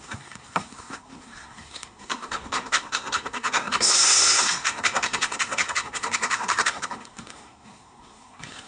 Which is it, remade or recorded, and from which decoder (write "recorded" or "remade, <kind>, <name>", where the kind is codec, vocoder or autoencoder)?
remade, codec, SNAC